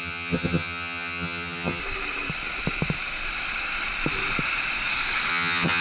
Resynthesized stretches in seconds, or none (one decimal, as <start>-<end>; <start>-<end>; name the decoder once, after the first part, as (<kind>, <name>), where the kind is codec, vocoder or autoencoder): 0.0-1.8 (vocoder, HiFi-GAN); 5.3-5.8

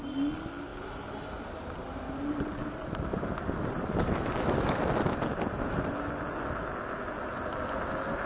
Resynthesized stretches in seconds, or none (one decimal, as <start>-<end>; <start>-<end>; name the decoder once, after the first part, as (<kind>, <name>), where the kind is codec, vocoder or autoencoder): 0.7-4.1 (vocoder, BigVGAN v2)

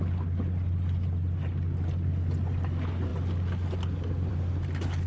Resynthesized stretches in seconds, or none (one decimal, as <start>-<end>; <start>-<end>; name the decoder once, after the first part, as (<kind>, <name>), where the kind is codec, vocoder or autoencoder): none